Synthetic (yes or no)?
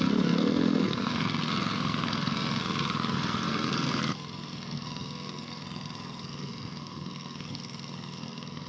yes